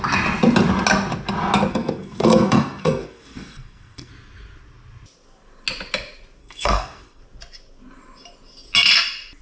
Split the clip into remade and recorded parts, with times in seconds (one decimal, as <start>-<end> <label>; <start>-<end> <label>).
0.0-1.7 recorded; 1.7-4.1 remade; 4.1-6.4 recorded; 6.4-7.2 remade; 7.2-9.4 recorded